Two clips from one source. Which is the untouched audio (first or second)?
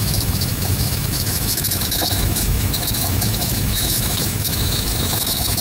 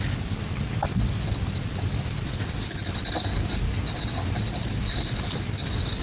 second